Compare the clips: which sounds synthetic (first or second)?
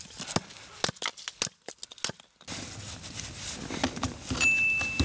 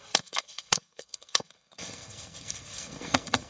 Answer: second